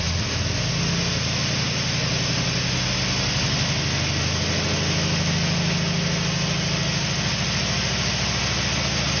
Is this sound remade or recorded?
recorded